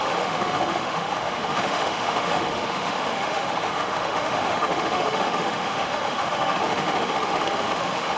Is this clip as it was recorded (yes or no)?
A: no